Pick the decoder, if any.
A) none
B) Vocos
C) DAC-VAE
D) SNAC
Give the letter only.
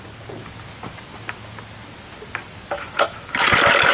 A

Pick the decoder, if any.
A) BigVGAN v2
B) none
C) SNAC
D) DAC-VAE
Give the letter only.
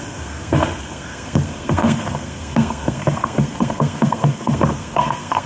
C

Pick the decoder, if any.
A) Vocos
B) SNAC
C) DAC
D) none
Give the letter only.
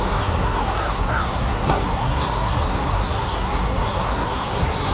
B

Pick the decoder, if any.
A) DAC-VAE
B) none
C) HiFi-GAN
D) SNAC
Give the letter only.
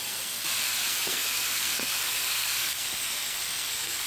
D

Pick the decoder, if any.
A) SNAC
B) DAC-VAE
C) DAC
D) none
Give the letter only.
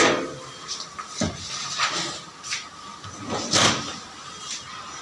D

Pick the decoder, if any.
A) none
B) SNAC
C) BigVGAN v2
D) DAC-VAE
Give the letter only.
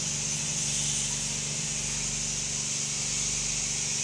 A